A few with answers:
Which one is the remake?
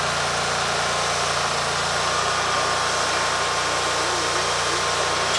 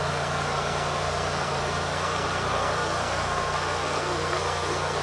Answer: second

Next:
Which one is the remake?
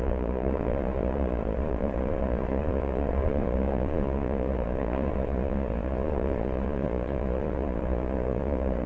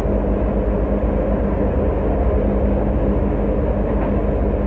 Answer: first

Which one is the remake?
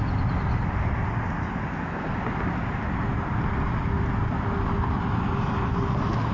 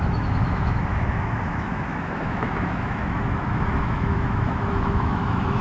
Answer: second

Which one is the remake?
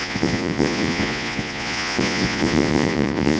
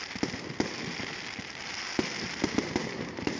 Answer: first